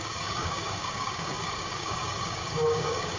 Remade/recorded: remade